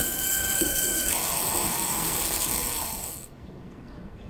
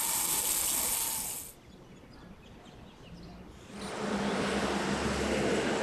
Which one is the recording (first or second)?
second